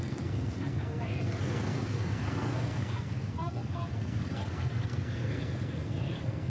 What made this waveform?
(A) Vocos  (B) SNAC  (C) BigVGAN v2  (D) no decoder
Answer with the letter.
B